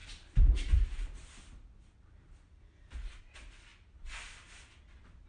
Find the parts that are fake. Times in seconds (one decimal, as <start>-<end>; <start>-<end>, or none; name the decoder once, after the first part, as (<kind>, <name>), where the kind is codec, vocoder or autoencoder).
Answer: 0.0-3.2 (vocoder, BigVGAN v2)